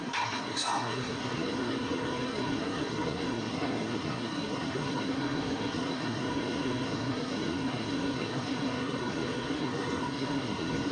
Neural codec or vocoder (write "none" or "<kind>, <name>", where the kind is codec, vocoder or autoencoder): codec, SNAC